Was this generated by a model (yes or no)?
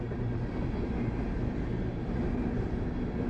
no